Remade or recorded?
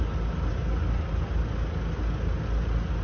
recorded